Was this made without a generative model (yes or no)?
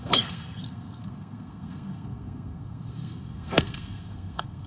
no